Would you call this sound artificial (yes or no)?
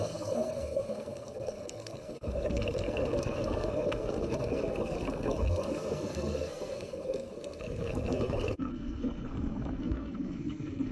yes